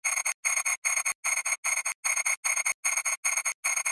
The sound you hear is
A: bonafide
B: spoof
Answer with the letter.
A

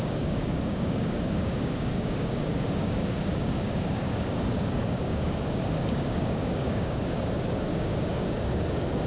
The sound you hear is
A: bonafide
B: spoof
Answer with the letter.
B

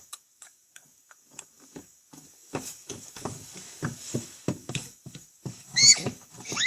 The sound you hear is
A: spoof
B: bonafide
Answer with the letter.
A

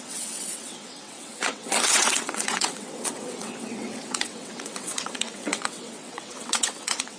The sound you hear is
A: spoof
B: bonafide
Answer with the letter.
A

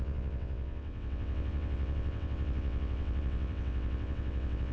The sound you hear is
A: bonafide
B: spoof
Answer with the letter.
B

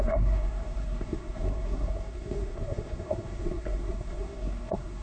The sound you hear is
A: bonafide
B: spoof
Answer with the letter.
B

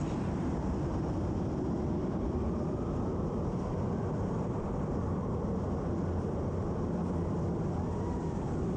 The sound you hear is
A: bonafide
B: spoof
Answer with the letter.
B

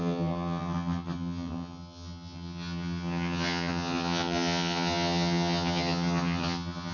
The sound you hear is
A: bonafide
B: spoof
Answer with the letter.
B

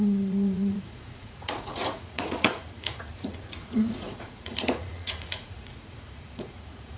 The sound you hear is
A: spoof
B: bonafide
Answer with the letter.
A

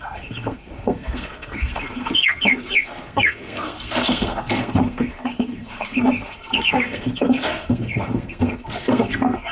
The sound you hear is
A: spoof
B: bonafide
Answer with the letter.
A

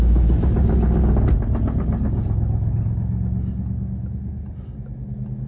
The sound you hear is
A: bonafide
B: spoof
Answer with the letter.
A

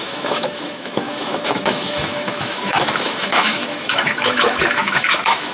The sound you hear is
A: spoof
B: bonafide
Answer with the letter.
A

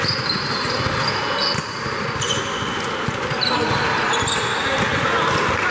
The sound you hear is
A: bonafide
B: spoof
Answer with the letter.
A